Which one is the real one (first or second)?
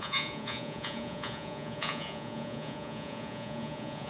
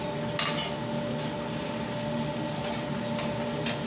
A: second